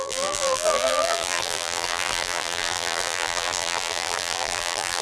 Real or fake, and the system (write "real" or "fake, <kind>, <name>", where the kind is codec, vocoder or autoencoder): fake, vocoder, BigVGAN v2